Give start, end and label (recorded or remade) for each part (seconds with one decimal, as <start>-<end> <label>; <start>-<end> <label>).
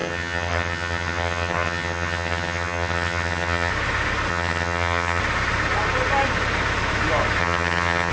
0.0-3.7 remade; 3.7-4.3 recorded; 4.3-5.2 remade; 5.2-7.4 recorded; 7.4-8.1 remade